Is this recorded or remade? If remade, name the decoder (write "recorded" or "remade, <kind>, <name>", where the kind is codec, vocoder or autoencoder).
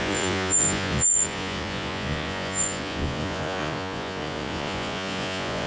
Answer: remade, vocoder, Vocos